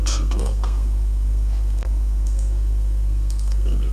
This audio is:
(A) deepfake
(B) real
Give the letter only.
A